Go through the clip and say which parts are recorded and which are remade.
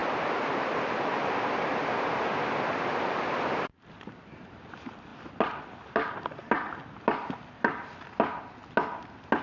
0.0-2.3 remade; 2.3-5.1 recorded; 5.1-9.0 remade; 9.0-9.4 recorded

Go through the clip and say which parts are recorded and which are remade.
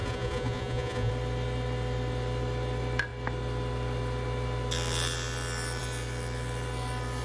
0.0-1.1 remade; 1.1-7.2 recorded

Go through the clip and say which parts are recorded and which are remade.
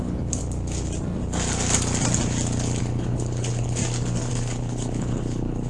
0.0-0.4 remade; 0.4-2.8 recorded; 2.8-3.8 remade; 3.8-4.3 recorded; 4.3-5.7 remade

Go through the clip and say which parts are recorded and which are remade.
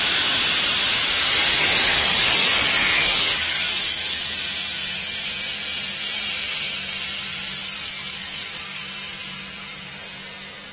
0.0-1.6 recorded; 1.6-4.4 remade; 4.4-7.6 recorded; 7.6-8.8 remade; 8.8-10.7 recorded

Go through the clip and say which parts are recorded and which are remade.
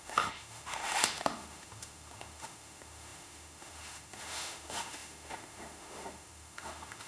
0.0-7.1 remade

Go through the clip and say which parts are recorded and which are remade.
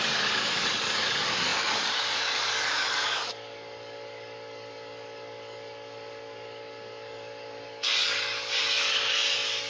0.0-9.7 remade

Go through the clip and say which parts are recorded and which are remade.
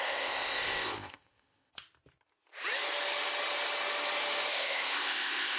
0.0-1.7 remade; 1.7-4.5 recorded; 4.5-5.6 remade